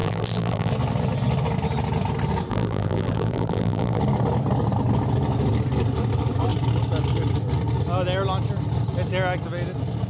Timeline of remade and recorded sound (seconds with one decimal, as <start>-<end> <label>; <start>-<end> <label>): 0.0-0.7 remade; 0.7-2.5 recorded; 2.5-4.0 remade; 4.0-10.1 recorded